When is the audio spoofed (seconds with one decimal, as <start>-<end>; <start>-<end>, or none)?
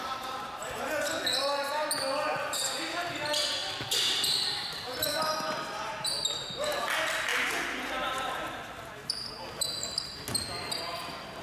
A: 3.6-5.1